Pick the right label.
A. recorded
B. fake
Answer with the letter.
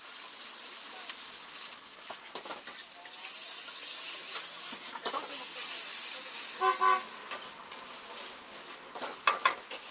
A